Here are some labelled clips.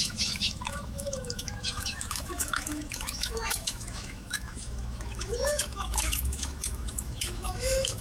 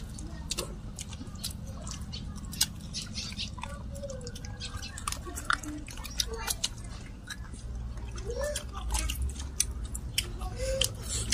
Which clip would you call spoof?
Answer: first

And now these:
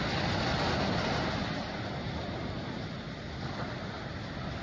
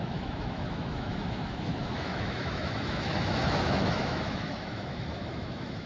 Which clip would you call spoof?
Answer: second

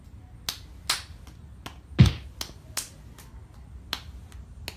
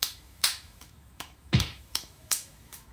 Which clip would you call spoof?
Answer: second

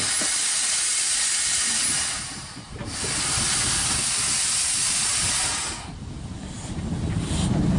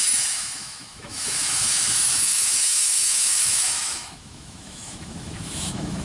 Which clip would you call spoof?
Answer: second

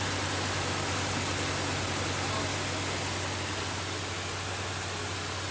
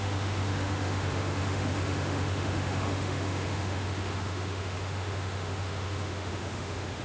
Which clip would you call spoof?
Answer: second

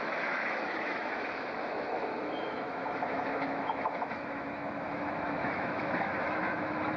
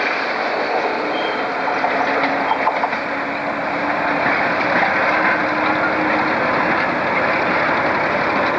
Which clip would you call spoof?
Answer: first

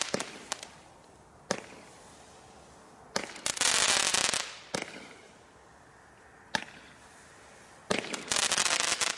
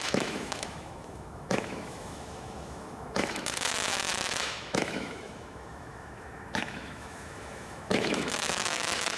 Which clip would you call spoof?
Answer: second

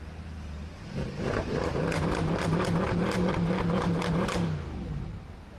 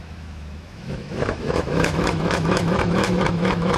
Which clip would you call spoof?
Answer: second